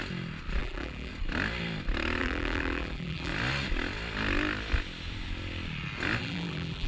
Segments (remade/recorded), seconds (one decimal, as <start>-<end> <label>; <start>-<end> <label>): 0.0-0.6 recorded; 0.6-1.1 remade; 1.1-2.2 recorded; 2.2-3.3 remade; 3.3-6.2 recorded; 6.2-6.9 remade

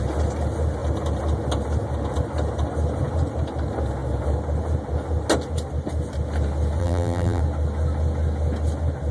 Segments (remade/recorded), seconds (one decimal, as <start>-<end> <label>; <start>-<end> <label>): 0.0-6.8 recorded; 6.8-7.4 remade; 7.4-9.1 recorded

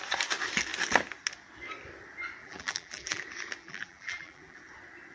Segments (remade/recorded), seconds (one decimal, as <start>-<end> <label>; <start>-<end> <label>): 0.0-2.4 recorded; 2.4-3.2 remade; 3.2-3.6 recorded; 3.6-4.6 remade; 4.6-5.1 recorded

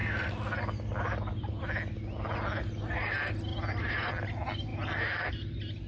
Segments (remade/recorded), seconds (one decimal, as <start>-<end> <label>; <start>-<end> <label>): 0.0-1.6 remade; 1.6-3.5 recorded; 3.5-4.1 remade; 4.1-5.9 recorded